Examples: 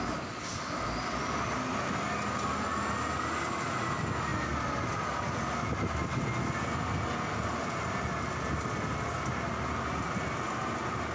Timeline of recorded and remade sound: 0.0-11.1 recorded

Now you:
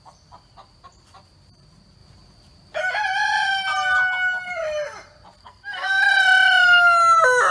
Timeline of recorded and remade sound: 0.0-5.4 recorded; 5.4-6.0 remade; 6.0-7.5 recorded

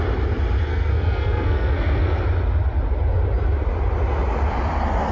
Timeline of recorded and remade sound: 0.0-0.7 recorded; 0.7-2.2 remade; 2.2-5.1 recorded

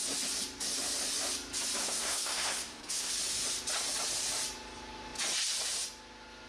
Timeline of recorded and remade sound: 0.0-1.8 recorded; 1.8-3.1 remade; 3.1-6.5 recorded

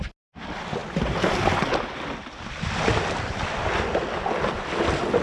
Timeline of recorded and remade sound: 0.0-5.2 recorded

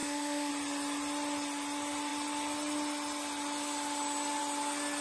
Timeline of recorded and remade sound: 0.0-0.5 remade; 0.5-5.0 recorded

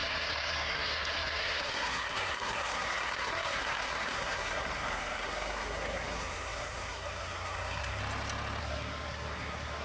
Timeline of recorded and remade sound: 0.0-8.0 remade; 8.0-8.6 recorded; 8.6-9.8 remade